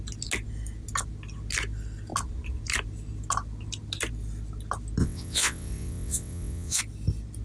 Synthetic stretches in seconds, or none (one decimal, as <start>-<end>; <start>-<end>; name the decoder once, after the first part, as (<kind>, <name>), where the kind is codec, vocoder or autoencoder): 5.0-6.8 (vocoder, WaveNeXt)

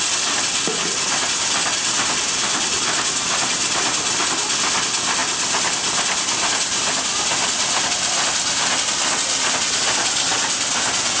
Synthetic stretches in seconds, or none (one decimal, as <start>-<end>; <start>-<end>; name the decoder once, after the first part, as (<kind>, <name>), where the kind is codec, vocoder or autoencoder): 5.2-9.0 (vocoder, BigVGAN v2)

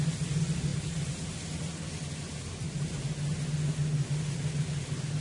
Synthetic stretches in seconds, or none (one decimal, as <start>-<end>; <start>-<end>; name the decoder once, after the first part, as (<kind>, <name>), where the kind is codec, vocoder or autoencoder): none

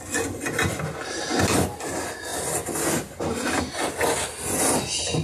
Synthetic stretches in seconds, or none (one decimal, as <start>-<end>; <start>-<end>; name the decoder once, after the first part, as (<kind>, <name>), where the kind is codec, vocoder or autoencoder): none

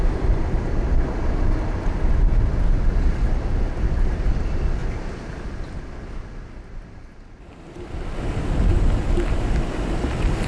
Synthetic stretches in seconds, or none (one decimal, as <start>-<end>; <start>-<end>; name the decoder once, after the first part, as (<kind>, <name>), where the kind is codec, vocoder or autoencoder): none

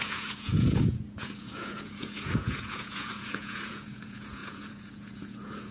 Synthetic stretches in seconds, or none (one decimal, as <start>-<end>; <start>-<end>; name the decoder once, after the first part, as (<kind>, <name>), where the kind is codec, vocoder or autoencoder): 0.0-5.7 (vocoder, Vocos)

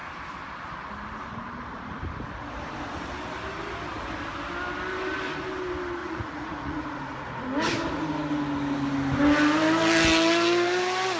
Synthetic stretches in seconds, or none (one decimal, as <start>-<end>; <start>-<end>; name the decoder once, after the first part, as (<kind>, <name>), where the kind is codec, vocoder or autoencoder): 6.0-7.3 (vocoder, Vocos)